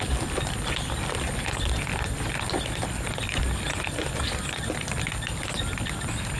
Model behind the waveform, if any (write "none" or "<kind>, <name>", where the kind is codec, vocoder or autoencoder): none